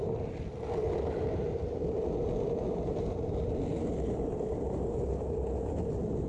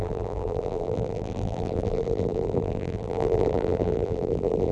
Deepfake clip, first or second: second